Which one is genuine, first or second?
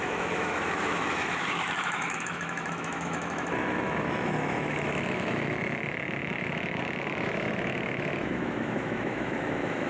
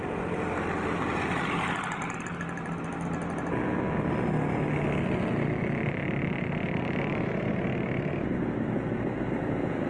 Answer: second